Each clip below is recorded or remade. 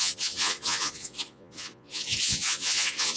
remade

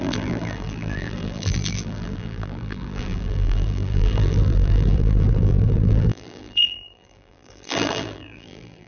remade